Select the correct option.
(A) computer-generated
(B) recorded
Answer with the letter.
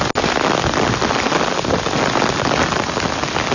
B